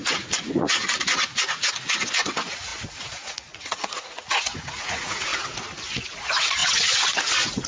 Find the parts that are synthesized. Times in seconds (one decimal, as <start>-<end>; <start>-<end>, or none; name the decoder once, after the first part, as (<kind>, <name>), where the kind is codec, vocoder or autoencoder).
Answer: 0.0-5.3 (vocoder, Vocos); 6.1-7.7